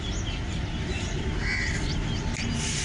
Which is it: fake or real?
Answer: real